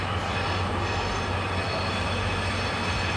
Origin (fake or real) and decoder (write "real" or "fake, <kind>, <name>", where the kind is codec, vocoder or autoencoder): real